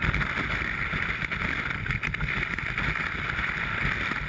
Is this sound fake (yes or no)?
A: no